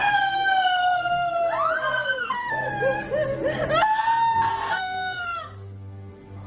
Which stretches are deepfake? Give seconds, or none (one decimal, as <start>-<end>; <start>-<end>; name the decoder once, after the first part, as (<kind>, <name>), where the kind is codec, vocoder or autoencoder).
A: 0.8-1.4 (codec, SNAC); 1.8-2.7; 4.5-6.1